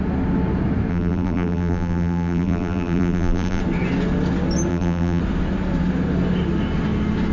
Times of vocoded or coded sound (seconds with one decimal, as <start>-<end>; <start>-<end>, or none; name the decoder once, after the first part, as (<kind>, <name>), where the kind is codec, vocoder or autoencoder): 0.9-3.6 (vocoder, BigVGAN v2); 4.7-5.2